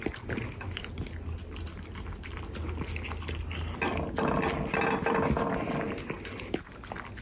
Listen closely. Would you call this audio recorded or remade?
recorded